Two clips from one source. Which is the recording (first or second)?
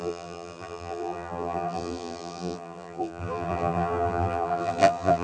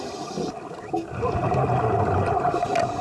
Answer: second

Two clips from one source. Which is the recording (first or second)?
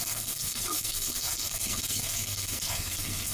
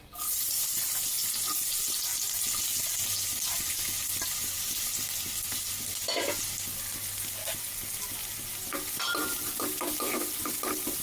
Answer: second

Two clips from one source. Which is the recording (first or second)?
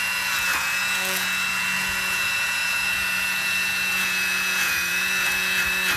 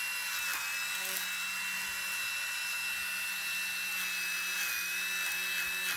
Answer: second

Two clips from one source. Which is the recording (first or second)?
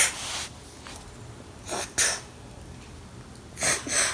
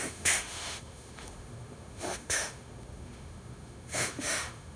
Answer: first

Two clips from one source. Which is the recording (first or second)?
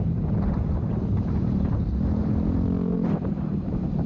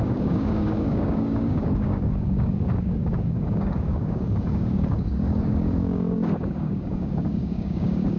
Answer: first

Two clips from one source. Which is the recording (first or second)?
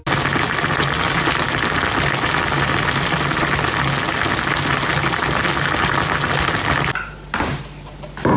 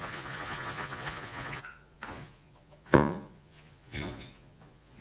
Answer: first